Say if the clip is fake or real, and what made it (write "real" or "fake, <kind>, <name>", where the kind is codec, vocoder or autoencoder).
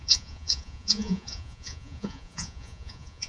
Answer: fake, vocoder, Vocos